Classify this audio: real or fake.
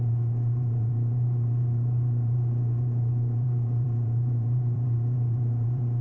fake